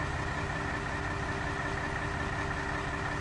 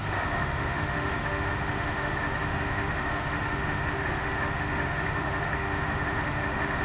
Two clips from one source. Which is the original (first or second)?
first